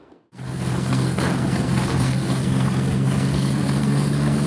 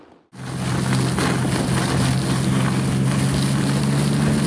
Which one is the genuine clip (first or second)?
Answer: second